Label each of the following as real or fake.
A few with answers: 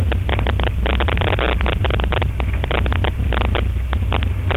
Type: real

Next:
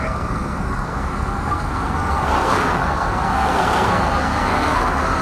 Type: fake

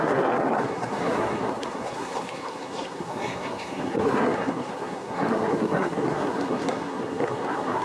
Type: fake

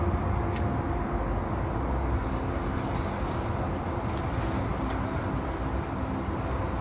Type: real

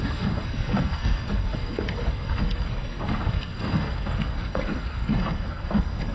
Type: fake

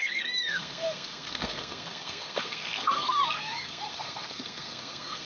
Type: fake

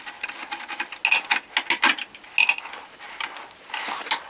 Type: real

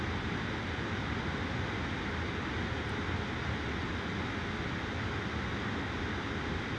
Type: real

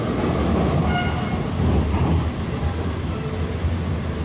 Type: real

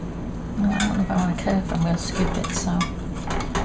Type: real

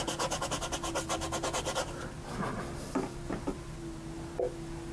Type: real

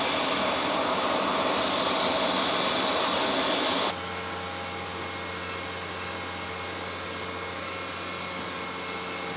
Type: real